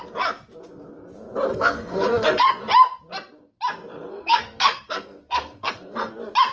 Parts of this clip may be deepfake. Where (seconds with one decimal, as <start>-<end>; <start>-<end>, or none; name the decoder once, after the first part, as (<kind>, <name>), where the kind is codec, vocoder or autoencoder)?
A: 1.5-2.5 (codec, SNAC); 4.2-6.1